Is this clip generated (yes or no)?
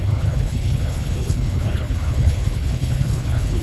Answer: yes